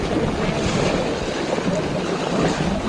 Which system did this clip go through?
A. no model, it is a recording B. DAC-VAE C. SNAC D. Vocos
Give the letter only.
A